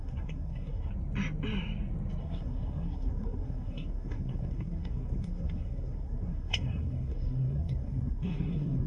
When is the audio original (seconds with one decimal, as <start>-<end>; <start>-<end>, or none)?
0.9-2.2